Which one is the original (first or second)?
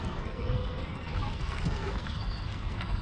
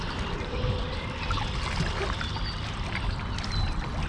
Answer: second